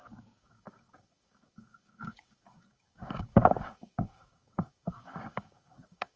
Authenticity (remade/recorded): remade